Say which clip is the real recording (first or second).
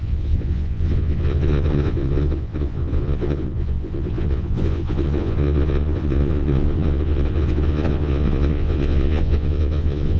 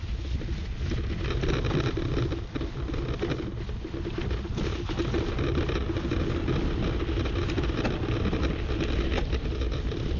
second